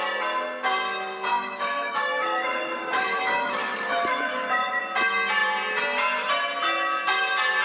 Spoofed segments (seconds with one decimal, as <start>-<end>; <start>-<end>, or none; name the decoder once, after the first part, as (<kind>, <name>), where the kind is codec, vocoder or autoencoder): 1.3-4.8 (autoencoder, DAC-VAE)